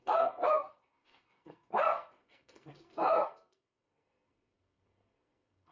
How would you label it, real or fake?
fake